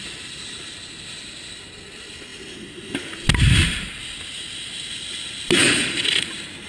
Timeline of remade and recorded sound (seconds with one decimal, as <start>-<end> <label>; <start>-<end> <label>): 0.0-5.6 recorded; 5.6-6.2 remade; 6.2-6.7 recorded